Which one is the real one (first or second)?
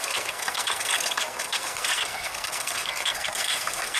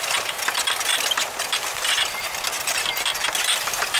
second